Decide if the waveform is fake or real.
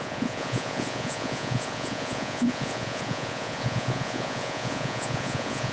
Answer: fake